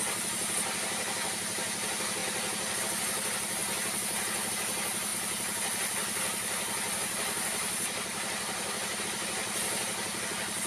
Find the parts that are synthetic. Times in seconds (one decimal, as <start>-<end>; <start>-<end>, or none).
2.2-2.8; 3.6-4.5; 5.1-9.0